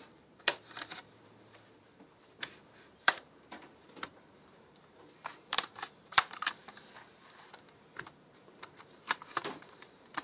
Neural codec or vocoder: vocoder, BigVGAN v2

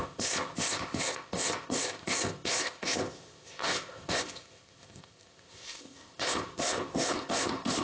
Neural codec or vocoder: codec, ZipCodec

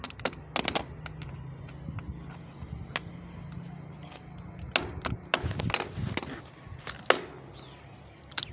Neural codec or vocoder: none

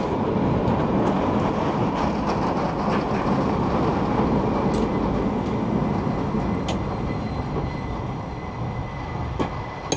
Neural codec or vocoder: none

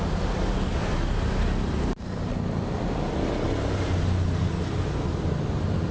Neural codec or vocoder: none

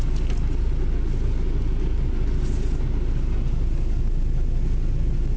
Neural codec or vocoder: none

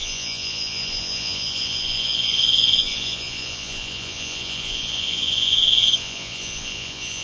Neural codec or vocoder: vocoder, Vocos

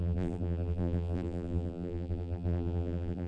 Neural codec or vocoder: vocoder, BigVGAN v2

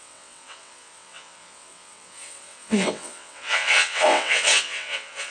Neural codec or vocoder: vocoder, WaveNeXt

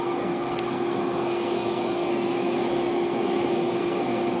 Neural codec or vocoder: codec, SNAC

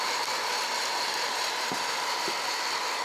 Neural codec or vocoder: none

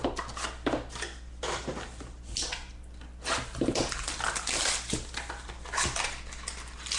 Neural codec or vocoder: none